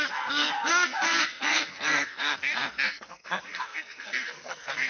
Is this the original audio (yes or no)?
no